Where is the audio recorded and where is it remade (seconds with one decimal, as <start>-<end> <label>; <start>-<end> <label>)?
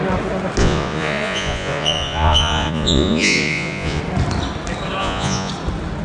0.0-0.6 recorded; 0.6-4.0 remade; 4.0-5.0 recorded; 5.0-5.5 remade; 5.5-6.0 recorded